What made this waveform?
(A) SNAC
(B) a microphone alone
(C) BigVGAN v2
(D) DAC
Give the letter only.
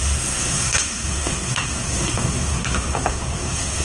A